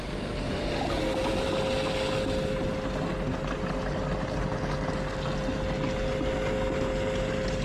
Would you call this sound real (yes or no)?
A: yes